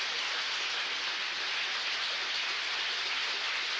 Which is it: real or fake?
real